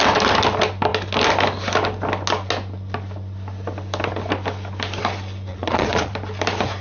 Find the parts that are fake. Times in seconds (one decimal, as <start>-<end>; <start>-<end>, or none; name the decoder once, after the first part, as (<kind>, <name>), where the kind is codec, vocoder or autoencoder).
5.5-6.1 (vocoder, Vocos)

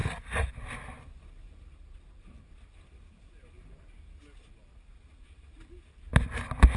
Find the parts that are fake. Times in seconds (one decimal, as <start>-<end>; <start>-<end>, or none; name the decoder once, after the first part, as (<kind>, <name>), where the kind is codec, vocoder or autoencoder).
none

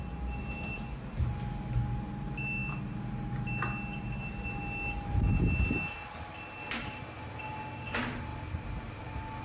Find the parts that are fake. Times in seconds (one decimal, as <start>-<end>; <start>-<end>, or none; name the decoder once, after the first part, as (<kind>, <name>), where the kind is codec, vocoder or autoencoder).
none

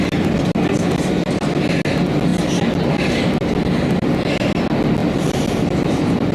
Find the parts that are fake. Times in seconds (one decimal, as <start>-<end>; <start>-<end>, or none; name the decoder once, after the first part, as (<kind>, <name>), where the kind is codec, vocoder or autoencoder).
2.3-3.2 (vocoder, BigVGAN v2); 5.0-6.3

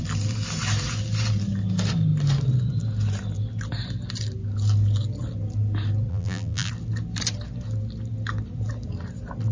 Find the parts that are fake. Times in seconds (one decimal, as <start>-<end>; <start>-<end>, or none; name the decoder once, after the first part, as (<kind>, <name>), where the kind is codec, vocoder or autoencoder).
6.1-6.7 (vocoder, BigVGAN v2)